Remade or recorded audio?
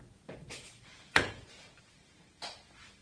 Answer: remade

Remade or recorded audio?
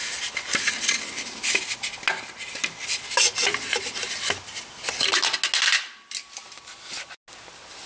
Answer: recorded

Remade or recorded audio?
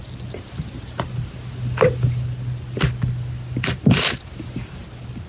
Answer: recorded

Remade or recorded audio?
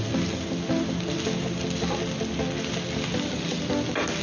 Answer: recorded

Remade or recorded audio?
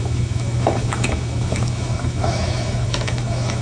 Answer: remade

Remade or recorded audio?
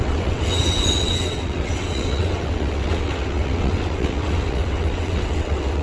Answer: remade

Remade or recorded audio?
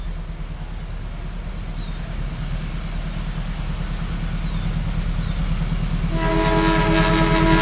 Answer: recorded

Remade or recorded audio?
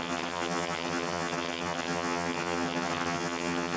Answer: remade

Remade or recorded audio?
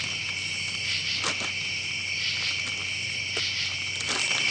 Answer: recorded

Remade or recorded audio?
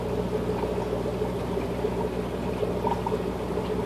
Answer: recorded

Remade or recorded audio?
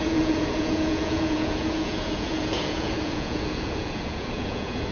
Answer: remade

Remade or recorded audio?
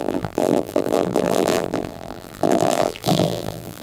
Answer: remade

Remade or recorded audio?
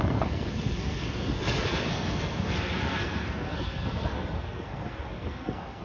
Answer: remade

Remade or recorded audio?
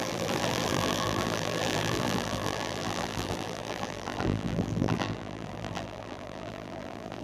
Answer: remade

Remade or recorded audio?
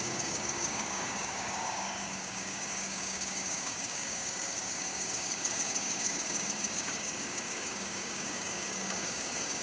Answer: remade